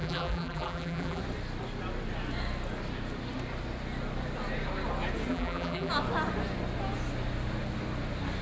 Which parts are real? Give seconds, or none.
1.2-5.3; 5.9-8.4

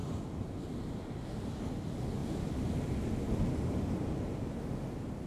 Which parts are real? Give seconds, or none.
0.0-5.3

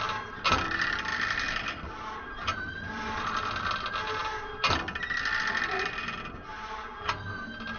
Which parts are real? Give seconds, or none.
0.0-1.1; 2.9-7.8

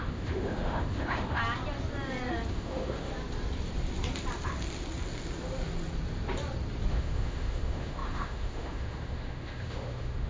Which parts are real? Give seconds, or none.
1.4-2.5; 3.1-6.9